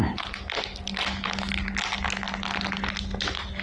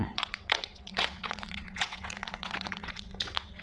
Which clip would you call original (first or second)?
first